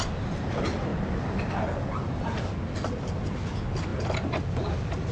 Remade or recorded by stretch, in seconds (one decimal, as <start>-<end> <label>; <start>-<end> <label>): 0.0-5.1 recorded